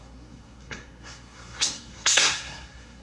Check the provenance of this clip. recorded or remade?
remade